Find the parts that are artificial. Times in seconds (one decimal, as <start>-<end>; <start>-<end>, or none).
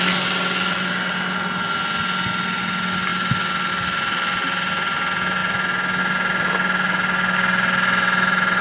none